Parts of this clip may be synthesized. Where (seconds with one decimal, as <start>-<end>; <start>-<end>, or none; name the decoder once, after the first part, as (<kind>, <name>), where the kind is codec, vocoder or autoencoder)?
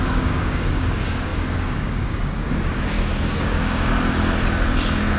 0.0-3.9 (codec, DAC)